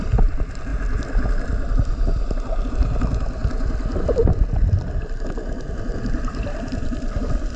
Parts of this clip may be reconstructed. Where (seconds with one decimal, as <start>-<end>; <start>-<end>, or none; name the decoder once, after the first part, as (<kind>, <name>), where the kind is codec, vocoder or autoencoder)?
0.0-0.7 (vocoder, BigVGAN v2); 2.7-3.4; 6.0-7.6